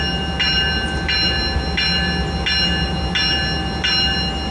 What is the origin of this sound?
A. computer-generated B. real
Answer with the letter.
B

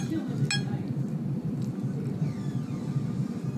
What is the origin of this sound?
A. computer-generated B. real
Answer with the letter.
B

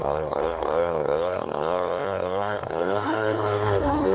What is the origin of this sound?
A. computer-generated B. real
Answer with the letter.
A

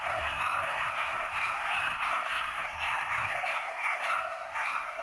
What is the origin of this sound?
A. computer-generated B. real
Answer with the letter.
A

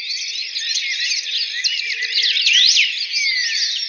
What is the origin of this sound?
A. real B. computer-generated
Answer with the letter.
A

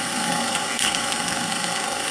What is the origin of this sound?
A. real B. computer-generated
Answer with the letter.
B